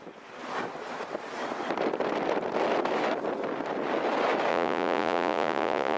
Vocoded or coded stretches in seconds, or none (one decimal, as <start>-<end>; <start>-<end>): 4.5-6.0